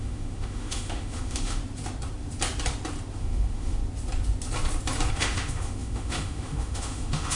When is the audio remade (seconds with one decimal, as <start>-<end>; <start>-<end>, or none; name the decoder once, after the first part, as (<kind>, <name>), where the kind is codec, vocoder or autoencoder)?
0.0-1.6 (autoencoder, DAC-VAE); 3.2-3.8; 5.1-7.4